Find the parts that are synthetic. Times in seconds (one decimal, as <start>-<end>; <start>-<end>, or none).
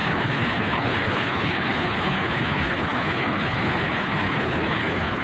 0.0-5.2